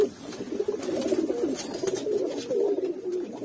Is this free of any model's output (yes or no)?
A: yes